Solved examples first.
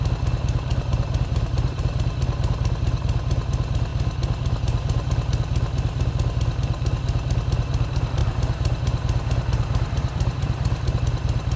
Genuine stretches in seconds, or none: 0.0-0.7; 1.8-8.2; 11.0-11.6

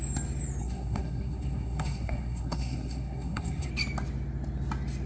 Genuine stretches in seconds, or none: 0.0-0.6; 3.7-5.1